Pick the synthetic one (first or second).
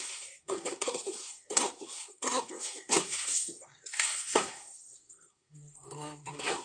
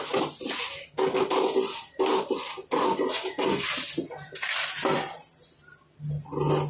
first